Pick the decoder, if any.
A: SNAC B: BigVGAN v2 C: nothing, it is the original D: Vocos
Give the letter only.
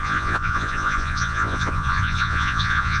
D